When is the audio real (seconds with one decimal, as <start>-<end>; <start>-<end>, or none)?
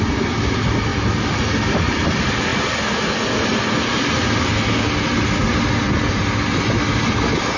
0.0-7.6